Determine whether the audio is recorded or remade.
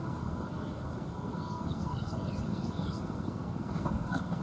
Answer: remade